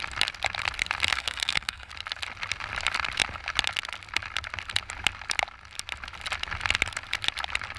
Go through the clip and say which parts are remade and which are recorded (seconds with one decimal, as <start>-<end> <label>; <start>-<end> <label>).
0.0-1.1 recorded; 1.1-1.9 remade; 1.9-7.8 recorded